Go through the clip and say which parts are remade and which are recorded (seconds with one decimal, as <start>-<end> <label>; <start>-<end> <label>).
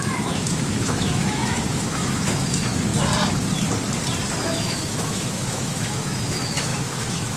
0.0-2.9 remade; 2.9-4.4 recorded; 4.4-7.4 remade